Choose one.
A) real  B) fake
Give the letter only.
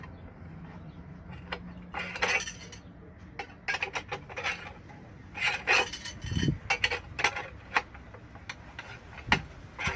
A